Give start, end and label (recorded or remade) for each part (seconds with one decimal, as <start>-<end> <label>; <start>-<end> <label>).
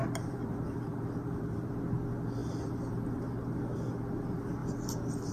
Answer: 0.0-1.8 remade; 1.8-2.4 recorded; 2.4-2.9 remade; 2.9-5.3 recorded